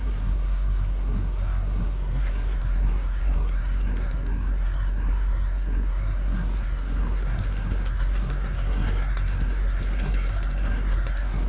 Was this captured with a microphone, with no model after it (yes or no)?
no